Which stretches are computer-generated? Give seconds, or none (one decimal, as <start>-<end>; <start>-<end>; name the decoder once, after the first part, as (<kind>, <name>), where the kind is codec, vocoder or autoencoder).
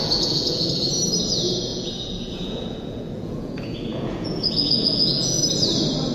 0.0-0.7 (vocoder, Vocos); 1.7-5.4